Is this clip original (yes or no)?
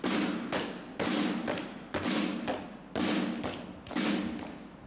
yes